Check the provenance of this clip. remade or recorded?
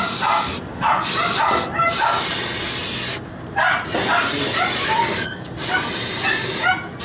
recorded